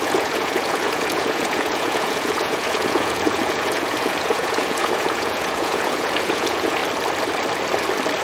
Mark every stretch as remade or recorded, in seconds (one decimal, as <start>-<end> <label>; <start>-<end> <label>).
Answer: 0.0-6.8 remade; 6.8-8.2 recorded